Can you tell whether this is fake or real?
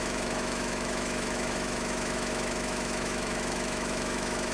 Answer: fake